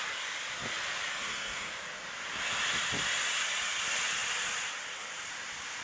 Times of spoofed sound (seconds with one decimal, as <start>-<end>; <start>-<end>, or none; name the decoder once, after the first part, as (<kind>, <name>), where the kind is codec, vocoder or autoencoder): 1.1-1.7 (codec, SNAC)